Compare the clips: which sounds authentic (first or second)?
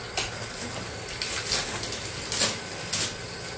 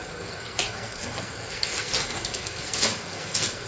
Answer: first